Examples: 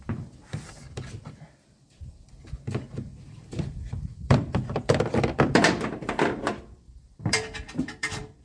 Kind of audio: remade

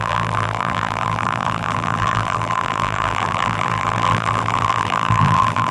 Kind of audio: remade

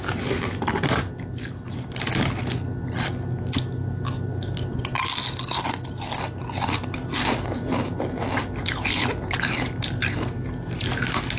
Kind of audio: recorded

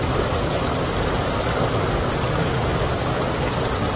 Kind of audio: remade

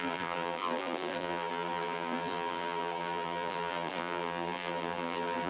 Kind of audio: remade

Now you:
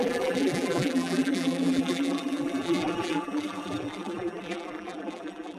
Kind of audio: remade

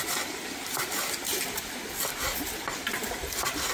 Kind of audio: recorded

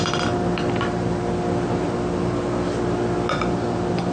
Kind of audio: recorded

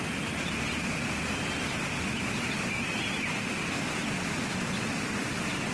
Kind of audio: remade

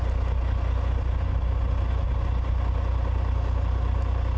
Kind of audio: recorded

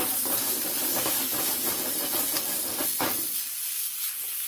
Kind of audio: recorded